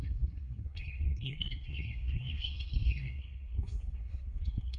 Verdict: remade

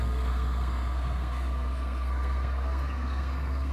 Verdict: remade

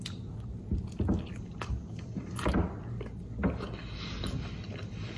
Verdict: recorded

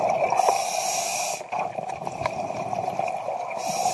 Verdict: recorded